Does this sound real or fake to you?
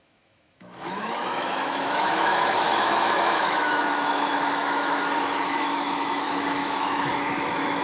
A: fake